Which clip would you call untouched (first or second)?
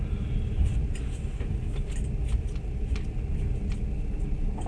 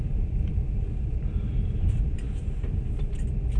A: first